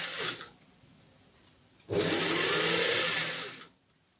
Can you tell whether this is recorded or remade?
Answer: recorded